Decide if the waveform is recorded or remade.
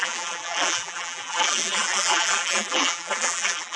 remade